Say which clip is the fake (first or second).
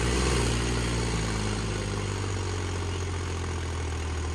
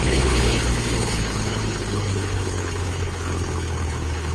second